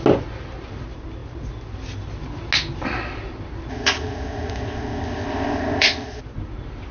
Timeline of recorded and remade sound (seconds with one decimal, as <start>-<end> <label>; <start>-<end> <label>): 0.0-3.7 recorded; 3.7-6.2 remade; 6.2-6.9 recorded

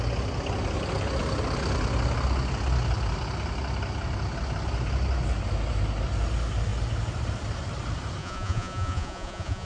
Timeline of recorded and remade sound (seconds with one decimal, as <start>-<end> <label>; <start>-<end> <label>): 0.0-8.2 recorded; 8.2-9.7 remade

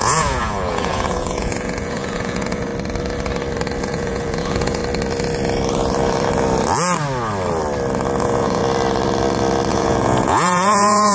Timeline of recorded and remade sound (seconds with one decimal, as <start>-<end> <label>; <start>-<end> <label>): 0.0-2.7 remade; 2.7-3.8 recorded; 3.8-4.8 remade; 4.8-8.2 recorded; 8.2-8.6 remade; 8.6-9.7 recorded; 9.7-11.1 remade

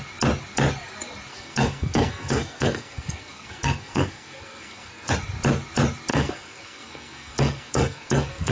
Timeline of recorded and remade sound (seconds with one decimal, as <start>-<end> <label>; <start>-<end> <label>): 0.0-1.3 recorded; 1.3-5.1 remade; 5.1-6.1 recorded; 6.1-8.5 remade